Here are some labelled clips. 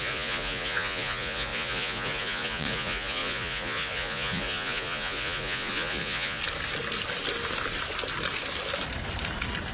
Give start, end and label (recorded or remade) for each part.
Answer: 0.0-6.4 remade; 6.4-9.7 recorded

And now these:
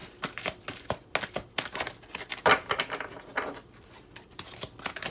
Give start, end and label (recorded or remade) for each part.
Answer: 0.0-5.1 recorded

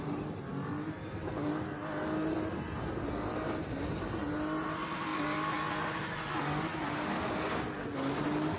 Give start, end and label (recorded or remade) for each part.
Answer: 0.0-8.6 recorded

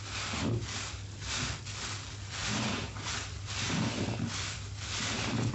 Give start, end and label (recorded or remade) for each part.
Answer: 0.0-5.5 remade

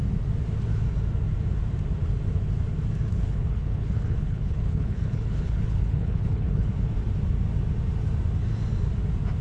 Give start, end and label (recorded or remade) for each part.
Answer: 0.0-3.1 recorded; 3.1-6.7 remade; 6.7-9.4 recorded

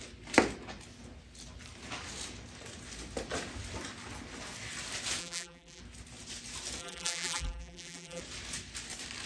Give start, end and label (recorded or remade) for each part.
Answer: 0.0-5.2 recorded; 5.2-5.8 remade; 5.8-6.8 recorded; 6.8-8.2 remade; 8.2-9.3 recorded